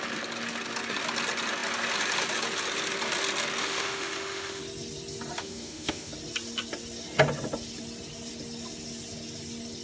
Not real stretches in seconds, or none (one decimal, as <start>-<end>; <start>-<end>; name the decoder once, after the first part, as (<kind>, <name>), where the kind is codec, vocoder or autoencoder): 3.6-4.6 (autoencoder, DAC-VAE); 5.4-6.1